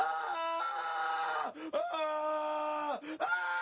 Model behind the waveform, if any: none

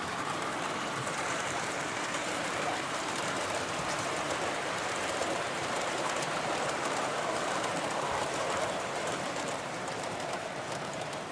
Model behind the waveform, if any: vocoder, BigVGAN v2